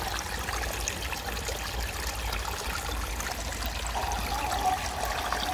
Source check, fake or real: real